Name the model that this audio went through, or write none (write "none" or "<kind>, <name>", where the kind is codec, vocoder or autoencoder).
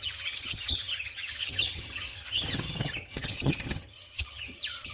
vocoder, HiFi-GAN